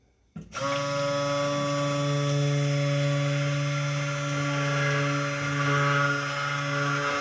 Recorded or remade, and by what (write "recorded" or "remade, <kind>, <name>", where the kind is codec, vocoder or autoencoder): recorded